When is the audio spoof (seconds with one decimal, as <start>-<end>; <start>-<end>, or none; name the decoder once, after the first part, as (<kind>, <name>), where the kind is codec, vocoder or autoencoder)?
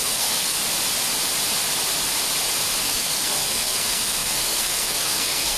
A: 0.0-0.6 (codec, SNAC); 2.8-5.6